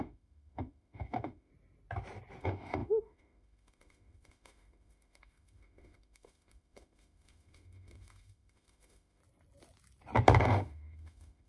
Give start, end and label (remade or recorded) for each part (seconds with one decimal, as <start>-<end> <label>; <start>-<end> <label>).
0.0-1.5 remade; 1.5-2.4 recorded; 2.4-9.2 remade; 9.2-10.4 recorded; 10.4-11.5 remade